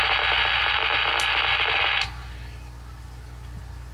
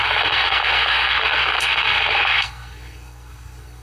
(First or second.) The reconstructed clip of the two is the second